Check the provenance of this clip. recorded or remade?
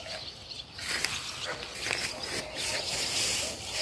recorded